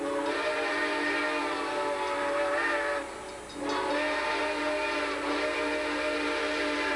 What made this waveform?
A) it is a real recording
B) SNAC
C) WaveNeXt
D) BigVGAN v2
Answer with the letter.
A